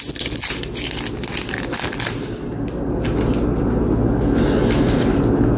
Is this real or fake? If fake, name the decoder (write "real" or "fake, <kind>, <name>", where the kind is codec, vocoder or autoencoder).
real